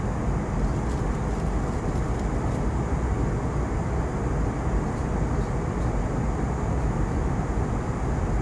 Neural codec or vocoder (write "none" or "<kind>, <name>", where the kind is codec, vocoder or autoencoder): none